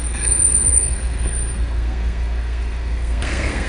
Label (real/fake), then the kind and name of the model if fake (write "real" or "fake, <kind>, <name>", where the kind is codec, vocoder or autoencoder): fake, codec, SNAC